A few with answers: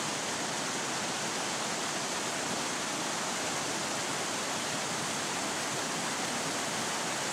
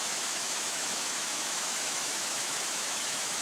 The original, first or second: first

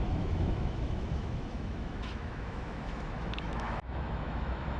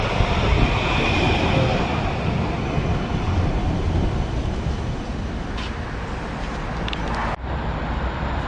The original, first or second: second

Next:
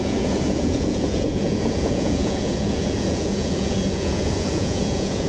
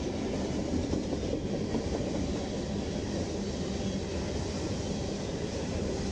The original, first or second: second